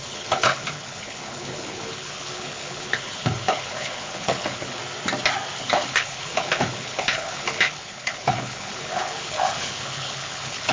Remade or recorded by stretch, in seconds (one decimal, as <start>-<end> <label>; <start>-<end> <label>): 0.0-4.8 remade; 4.8-5.6 recorded; 5.6-10.7 remade

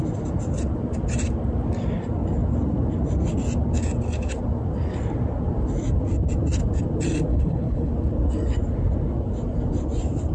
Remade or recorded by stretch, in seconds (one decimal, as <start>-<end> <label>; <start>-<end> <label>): 0.0-7.3 recorded; 7.3-7.9 remade; 7.9-10.3 recorded

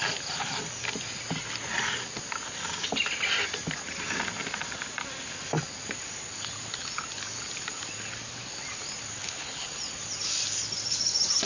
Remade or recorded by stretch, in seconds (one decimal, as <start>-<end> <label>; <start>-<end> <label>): 0.0-9.2 recorded; 9.2-9.7 remade; 9.7-11.5 recorded

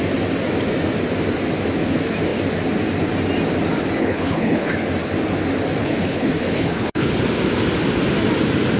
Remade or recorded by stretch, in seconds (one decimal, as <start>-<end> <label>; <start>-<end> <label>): 0.0-4.0 recorded; 4.0-4.7 remade; 4.7-5.8 recorded; 5.8-7.2 remade; 7.2-8.8 recorded